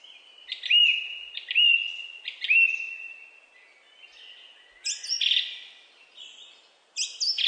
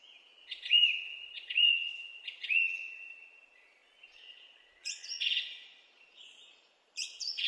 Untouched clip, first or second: first